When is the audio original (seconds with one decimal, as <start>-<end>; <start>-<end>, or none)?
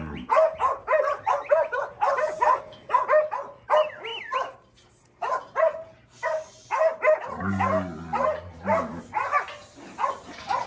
0.0-10.7